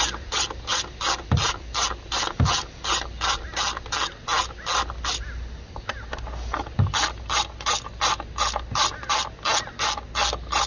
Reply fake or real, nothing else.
real